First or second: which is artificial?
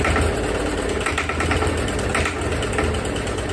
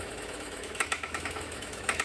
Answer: second